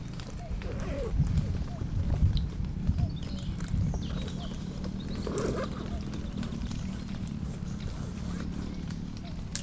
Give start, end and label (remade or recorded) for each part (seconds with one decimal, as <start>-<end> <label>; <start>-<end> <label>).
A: 0.0-6.5 recorded; 6.5-7.2 remade; 7.2-9.6 recorded

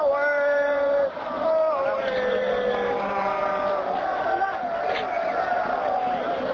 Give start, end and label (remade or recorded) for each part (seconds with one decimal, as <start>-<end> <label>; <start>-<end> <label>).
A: 0.0-2.5 remade; 2.5-6.1 recorded; 6.1-6.5 remade